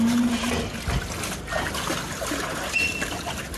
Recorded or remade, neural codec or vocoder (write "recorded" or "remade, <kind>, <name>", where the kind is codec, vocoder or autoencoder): recorded